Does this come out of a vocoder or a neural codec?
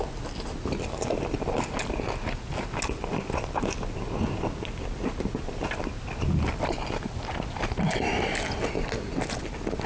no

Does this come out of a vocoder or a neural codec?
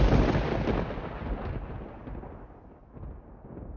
no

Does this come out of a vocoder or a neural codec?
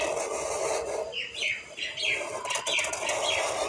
no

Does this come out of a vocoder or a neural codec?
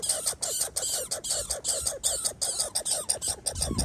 no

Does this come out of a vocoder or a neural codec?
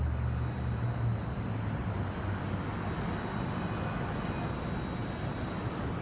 no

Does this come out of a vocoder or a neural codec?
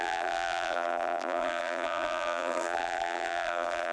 yes